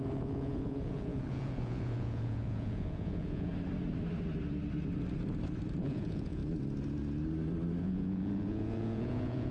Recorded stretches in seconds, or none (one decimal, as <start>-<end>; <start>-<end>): 3.5-5.8; 6.4-7.8